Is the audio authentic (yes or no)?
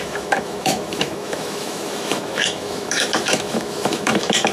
no